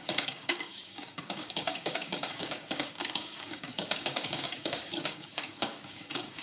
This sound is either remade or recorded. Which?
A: remade